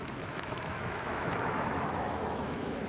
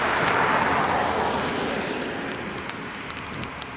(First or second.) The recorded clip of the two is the second